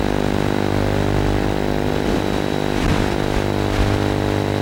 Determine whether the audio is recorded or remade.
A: recorded